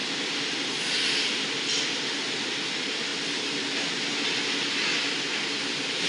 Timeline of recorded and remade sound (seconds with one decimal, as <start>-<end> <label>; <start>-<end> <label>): 0.0-6.1 recorded